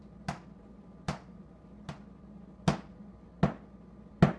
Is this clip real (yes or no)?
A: yes